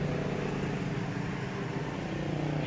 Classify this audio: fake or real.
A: real